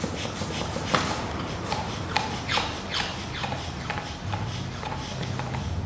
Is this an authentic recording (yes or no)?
yes